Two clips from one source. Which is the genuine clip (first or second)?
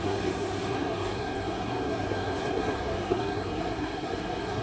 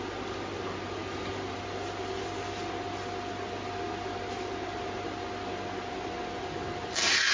second